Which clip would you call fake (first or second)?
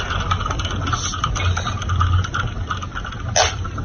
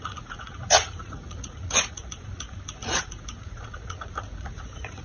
second